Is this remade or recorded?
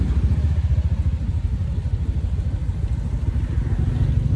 recorded